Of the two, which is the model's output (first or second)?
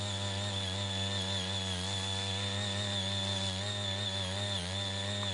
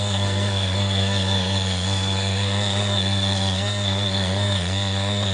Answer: second